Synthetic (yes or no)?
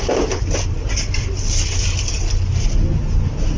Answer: no